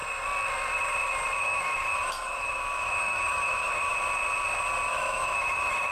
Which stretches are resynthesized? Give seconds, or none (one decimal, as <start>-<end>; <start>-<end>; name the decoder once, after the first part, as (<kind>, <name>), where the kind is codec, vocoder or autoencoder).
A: 1.4-3.9 (autoencoder, DAC-VAE); 4.9-5.9

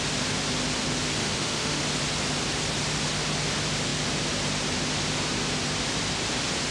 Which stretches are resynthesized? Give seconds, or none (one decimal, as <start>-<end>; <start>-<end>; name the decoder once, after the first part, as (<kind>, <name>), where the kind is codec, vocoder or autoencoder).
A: 1.2-1.8 (autoencoder, DAC-VAE)

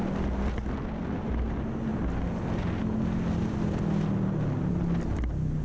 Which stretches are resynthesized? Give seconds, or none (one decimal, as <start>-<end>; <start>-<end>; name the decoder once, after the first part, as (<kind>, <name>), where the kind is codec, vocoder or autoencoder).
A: none

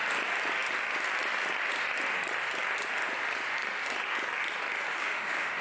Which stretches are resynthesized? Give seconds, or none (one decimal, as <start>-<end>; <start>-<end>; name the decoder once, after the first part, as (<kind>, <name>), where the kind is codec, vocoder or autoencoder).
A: 4.9-5.6 (autoencoder, DAC-VAE)

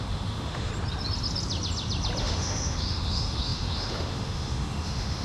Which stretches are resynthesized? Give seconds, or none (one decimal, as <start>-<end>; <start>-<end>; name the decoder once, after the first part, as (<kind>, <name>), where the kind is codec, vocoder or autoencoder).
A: 0.0-0.7 (autoencoder, DAC-VAE); 2.2-5.2

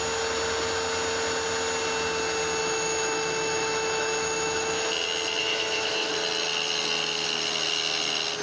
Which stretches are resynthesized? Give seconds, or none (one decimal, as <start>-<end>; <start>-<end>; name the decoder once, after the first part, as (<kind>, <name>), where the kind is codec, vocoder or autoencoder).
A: 2.6-4.9 (autoencoder, DAC-VAE); 5.4-6.1

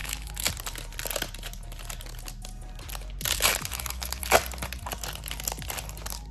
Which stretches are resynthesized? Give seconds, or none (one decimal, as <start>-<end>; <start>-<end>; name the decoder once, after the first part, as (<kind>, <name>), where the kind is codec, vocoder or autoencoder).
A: 0.0-0.5 (autoencoder, DAC-VAE); 3.7-4.2